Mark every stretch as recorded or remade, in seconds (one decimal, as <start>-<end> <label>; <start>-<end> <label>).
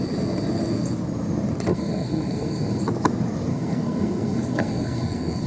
0.0-1.7 recorded; 1.7-2.8 remade; 2.8-3.5 recorded; 3.5-5.5 remade